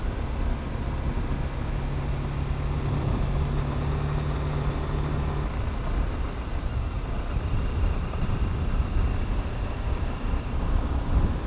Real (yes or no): yes